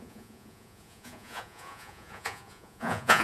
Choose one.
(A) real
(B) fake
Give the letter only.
B